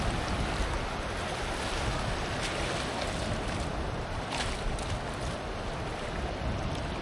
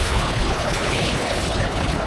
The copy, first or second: second